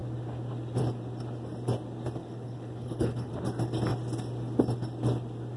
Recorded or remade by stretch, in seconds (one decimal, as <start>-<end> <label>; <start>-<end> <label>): 0.0-2.2 recorded; 2.2-3.3 remade; 3.3-5.6 recorded